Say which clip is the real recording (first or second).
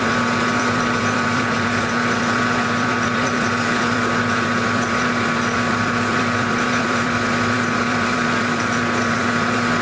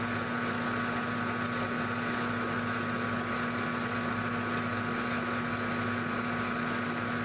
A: second